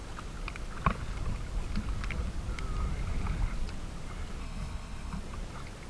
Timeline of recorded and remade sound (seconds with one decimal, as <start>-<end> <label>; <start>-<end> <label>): 0.0-4.4 recorded; 4.4-5.2 remade; 5.2-5.9 recorded